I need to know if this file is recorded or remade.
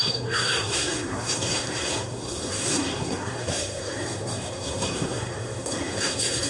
remade